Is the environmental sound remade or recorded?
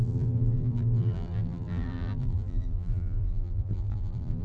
remade